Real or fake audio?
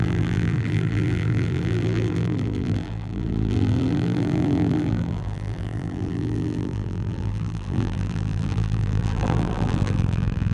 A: fake